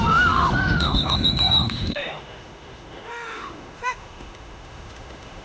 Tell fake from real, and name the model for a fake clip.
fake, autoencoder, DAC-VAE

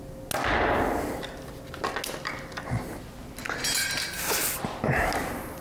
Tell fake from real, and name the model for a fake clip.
real